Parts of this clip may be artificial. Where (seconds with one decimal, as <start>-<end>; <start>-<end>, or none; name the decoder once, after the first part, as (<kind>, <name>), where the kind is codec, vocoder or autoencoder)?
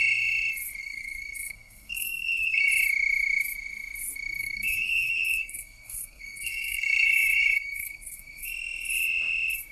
0.8-2.7 (codec, SNAC); 4.4-8.5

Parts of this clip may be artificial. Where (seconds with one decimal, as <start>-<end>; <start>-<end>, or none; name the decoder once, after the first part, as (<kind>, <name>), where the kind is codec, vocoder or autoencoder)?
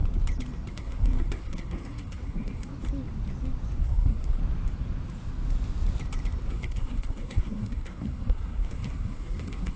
0.7-2.7 (codec, SNAC); 3.8-4.4; 6.5-9.8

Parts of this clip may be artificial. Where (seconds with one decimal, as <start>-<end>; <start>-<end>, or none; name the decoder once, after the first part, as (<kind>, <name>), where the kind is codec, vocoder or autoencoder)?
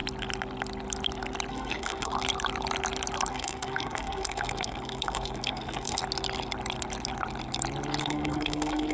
1.5-2.1 (codec, SNAC); 3.3-6.0; 8.0-8.9